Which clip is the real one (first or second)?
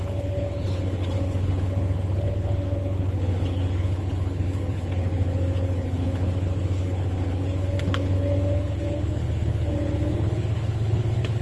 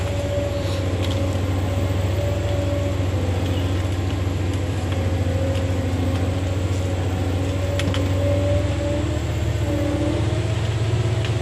second